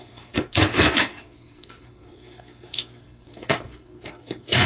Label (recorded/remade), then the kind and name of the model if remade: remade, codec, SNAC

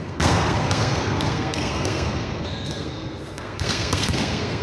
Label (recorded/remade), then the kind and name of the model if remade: remade, codec, SNAC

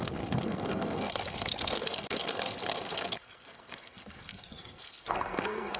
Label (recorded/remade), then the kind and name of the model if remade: remade, codec, SNAC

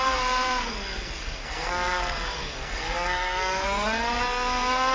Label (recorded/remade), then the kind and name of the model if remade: remade, codec, SNAC